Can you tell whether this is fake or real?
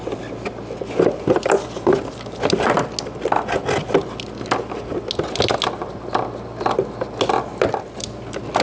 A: real